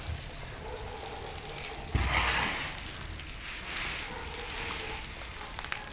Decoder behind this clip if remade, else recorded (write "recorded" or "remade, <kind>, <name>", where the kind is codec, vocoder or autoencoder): recorded